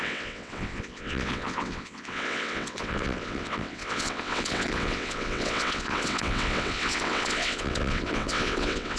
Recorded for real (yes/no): no